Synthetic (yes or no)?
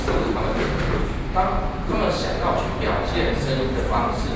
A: no